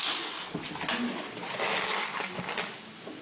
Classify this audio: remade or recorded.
recorded